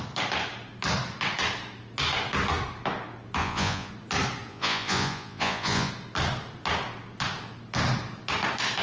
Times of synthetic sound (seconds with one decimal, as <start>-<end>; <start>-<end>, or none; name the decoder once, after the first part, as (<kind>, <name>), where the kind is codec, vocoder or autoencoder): 3.4-3.9 (vocoder, Vocos); 4.5-5.9